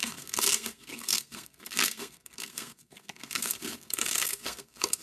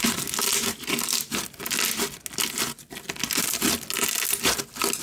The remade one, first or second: first